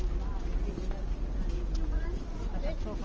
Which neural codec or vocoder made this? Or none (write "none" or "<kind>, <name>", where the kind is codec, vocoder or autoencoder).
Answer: none